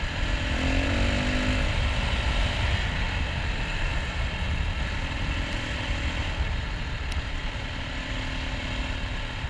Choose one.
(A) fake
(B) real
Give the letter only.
B